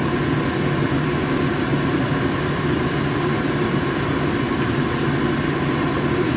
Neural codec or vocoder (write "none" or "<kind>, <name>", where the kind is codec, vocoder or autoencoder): none